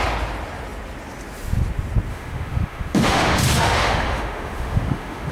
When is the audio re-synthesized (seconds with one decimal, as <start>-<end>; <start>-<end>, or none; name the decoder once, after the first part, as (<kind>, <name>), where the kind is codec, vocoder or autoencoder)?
2.1-5.3 (autoencoder, DAC-VAE)